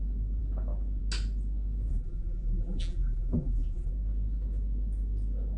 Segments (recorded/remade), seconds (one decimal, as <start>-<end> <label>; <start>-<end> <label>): 0.0-1.9 recorded; 1.9-3.9 remade; 3.9-5.6 recorded